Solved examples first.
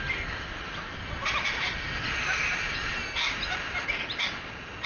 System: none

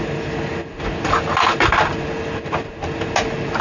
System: none